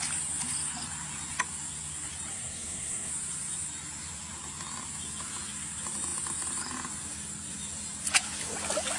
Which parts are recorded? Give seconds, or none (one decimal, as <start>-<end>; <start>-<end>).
0.0-2.3; 3.1-9.0